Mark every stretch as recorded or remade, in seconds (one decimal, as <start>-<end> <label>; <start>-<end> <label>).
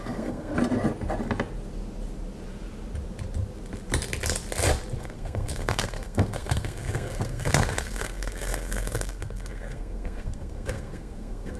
0.0-0.5 remade; 0.5-5.0 recorded; 5.0-11.6 remade